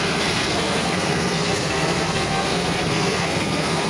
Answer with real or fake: fake